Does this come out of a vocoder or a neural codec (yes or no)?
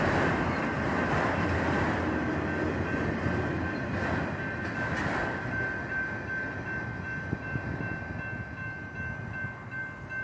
no